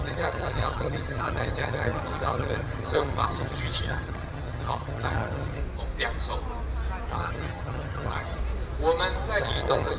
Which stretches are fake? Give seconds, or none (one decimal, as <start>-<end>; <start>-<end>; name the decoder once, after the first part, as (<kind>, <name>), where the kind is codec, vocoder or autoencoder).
0.0-5.6 (vocoder, HiFi-GAN); 7.1-8.4; 9.4-10.0